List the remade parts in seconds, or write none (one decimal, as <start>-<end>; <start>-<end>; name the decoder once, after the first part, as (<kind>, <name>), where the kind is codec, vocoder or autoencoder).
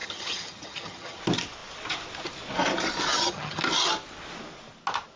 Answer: 0.0-1.2 (vocoder, HiFi-GAN); 3.1-3.6